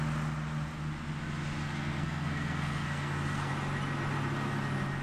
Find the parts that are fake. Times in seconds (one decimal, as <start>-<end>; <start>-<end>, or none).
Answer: 1.6-3.5